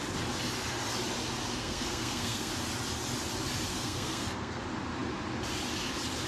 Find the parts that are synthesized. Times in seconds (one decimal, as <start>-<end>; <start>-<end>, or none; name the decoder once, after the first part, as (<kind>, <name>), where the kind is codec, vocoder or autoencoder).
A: 1.6-2.5 (codec, SNAC); 3.7-4.6